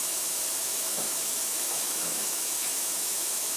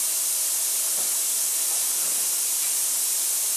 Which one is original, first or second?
second